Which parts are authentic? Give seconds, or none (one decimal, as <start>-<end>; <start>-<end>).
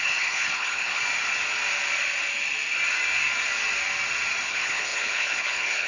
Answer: 1.0-4.5